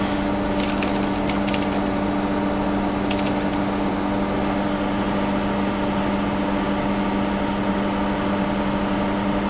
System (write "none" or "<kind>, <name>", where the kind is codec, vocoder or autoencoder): none